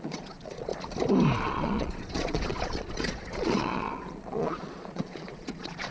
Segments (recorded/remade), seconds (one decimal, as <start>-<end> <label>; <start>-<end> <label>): 0.0-0.7 remade; 0.7-1.3 recorded; 1.3-5.9 remade